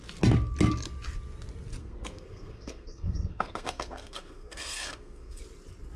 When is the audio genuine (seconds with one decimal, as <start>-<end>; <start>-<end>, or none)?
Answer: 0.0-1.8; 5.4-6.0